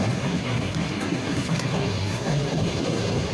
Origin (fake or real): fake